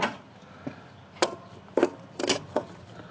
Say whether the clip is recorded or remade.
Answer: recorded